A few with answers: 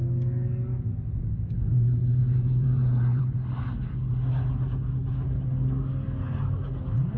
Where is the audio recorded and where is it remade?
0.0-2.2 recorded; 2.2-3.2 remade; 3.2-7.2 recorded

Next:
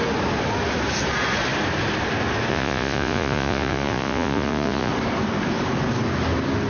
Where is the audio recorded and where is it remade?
0.0-2.5 recorded; 2.5-4.9 remade; 4.9-6.7 recorded